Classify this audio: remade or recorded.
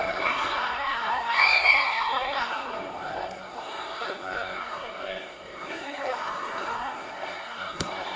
remade